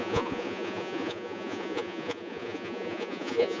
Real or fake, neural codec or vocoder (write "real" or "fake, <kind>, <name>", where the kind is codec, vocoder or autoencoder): fake, vocoder, Vocos